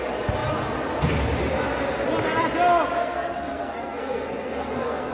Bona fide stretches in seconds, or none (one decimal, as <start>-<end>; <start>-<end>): 0.0-3.0

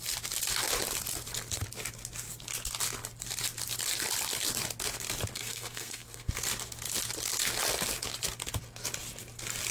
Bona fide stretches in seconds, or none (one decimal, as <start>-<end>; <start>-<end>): 0.0-5.3; 6.3-9.7

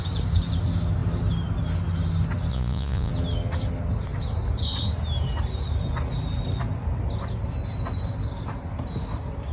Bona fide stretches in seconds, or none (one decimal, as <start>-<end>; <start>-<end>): 0.0-2.5; 3.1-9.5

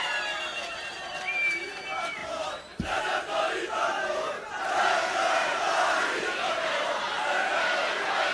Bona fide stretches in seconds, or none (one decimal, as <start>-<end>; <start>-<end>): none